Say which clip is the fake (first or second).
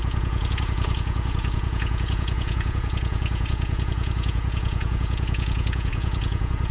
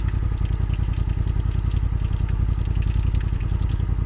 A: first